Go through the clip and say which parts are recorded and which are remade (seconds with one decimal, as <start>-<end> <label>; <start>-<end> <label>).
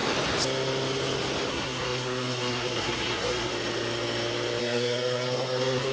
0.0-1.5 recorded; 1.5-3.5 remade; 3.5-4.6 recorded; 4.6-5.9 remade